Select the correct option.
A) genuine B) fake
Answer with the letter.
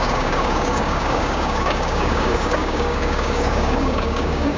B